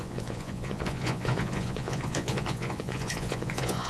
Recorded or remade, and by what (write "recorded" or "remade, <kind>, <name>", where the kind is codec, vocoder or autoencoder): remade, vocoder, Vocos